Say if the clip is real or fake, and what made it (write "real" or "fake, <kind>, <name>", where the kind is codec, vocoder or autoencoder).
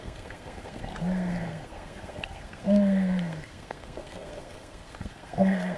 fake, codec, SNAC